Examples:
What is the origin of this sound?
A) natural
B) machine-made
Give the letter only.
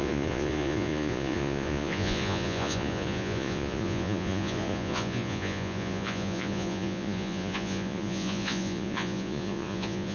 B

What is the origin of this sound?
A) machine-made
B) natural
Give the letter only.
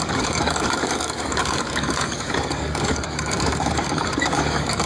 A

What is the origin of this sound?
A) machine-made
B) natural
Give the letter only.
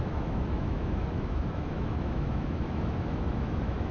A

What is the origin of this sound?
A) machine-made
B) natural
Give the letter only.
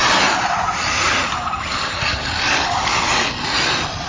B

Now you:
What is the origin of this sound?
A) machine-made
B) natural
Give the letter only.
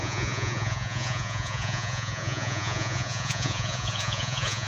A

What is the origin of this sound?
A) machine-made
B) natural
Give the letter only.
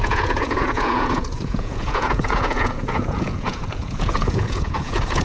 A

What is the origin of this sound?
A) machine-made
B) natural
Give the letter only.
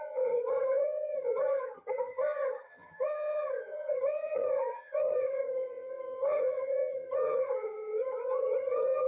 A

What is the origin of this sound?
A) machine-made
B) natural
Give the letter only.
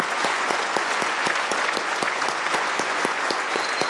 A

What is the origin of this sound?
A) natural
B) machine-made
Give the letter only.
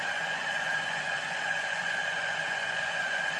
B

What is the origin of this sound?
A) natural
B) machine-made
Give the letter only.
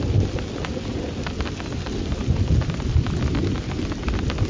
A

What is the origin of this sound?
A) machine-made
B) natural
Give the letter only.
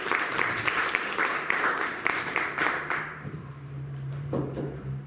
A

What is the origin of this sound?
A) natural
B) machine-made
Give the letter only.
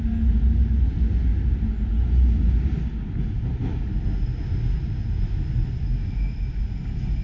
A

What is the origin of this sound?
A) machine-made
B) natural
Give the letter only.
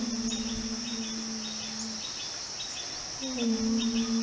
B